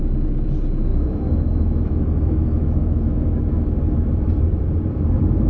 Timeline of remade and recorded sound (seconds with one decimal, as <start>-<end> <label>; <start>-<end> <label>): 0.0-0.9 recorded; 0.9-3.4 remade; 3.4-5.5 recorded

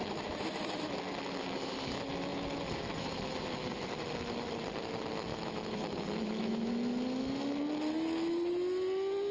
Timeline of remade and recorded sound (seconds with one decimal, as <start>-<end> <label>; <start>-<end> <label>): 0.0-0.9 remade; 0.9-5.3 recorded; 5.3-6.7 remade; 6.7-9.3 recorded

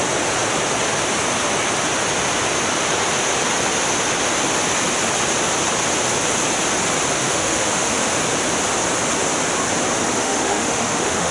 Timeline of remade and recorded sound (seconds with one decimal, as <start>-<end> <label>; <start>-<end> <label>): 0.0-7.2 recorded; 7.2-8.2 remade; 8.2-10.2 recorded; 10.2-11.3 remade